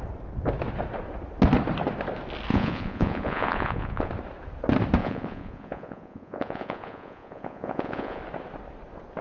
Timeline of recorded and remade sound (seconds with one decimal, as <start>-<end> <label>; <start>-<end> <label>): 0.0-2.5 recorded; 2.5-4.1 remade; 4.1-5.0 recorded; 5.0-8.2 remade; 8.2-9.2 recorded

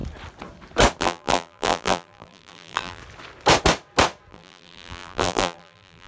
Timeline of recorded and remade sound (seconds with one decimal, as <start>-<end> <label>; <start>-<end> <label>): 0.0-1.0 recorded; 1.0-3.0 remade; 3.0-4.3 recorded; 4.3-6.1 remade

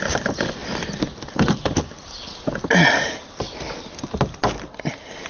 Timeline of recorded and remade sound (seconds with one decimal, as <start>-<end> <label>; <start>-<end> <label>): 0.0-5.3 recorded

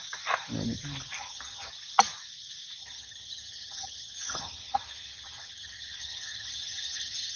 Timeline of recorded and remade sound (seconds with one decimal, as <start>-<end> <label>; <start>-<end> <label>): 0.0-1.2 recorded; 1.2-1.7 remade; 1.7-2.8 recorded; 2.8-7.4 remade

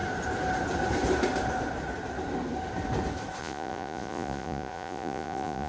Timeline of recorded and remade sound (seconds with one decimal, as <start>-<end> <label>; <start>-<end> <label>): 0.0-3.4 recorded; 3.4-5.7 remade